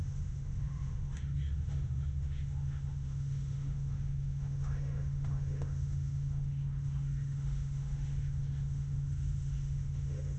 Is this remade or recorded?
remade